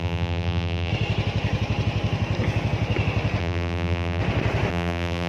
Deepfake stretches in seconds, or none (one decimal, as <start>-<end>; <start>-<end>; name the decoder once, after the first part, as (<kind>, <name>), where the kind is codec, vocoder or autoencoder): 0.0-0.9 (vocoder, BigVGAN v2); 3.4-4.2; 4.7-5.3